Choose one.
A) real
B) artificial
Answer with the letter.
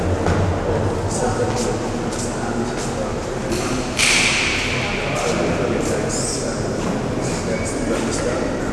A